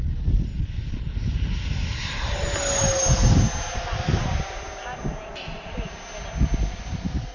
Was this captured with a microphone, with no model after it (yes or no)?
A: yes